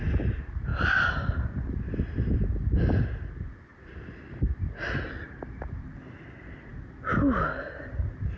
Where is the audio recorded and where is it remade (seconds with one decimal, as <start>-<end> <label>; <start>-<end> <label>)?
0.0-8.4 recorded